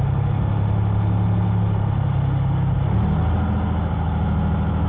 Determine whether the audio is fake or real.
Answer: real